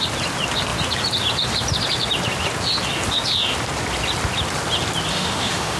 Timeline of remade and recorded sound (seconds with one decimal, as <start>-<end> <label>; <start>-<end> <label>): 0.0-5.1 recorded; 5.1-5.8 remade